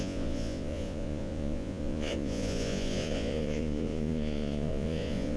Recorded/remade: remade